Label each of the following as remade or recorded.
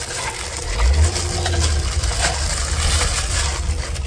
recorded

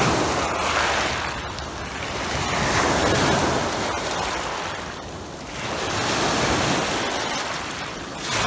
recorded